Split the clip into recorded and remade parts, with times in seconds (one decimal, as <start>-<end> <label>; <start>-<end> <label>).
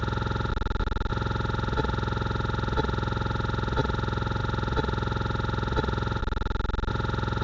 0.0-0.5 remade; 0.5-1.1 recorded; 1.1-6.2 remade; 6.2-6.9 recorded; 6.9-7.4 remade